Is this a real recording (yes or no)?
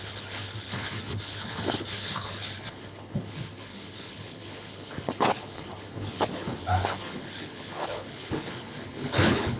no